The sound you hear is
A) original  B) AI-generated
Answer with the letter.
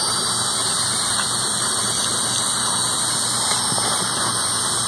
A